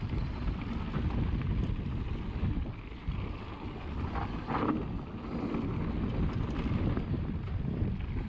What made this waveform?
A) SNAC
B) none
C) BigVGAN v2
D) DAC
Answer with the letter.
B